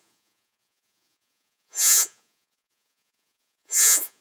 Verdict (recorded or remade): remade